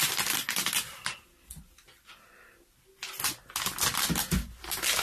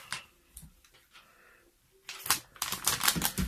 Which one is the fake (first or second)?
second